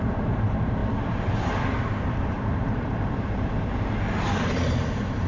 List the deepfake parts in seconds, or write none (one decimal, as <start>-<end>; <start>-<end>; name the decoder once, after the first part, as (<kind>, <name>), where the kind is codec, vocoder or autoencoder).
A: 0.0-5.3 (vocoder, BigVGAN v2)